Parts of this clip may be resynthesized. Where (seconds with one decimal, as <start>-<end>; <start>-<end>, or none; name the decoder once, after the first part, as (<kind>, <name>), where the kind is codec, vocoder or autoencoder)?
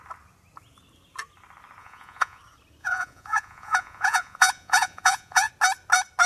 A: 1.8-2.4 (vocoder, Vocos); 2.8-5.5